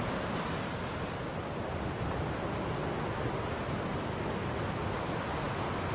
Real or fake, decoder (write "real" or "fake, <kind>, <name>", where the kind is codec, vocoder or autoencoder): real